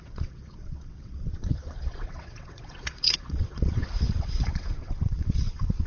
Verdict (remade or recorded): remade